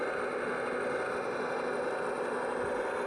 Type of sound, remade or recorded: recorded